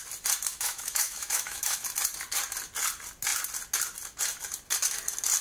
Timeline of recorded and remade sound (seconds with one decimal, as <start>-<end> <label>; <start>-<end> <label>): 0.0-0.5 recorded; 0.5-1.8 remade; 1.8-5.4 recorded